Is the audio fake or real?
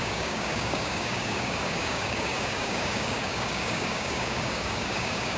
fake